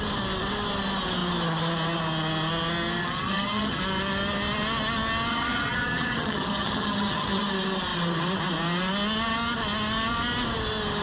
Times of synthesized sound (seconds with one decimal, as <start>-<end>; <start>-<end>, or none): 3.0-3.8; 5.3-7.4